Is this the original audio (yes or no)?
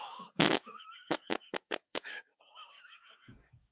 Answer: no